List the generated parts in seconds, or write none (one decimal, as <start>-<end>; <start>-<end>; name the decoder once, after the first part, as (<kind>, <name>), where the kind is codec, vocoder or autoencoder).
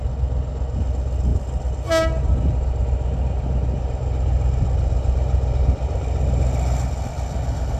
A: none